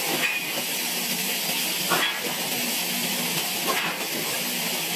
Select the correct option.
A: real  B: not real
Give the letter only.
A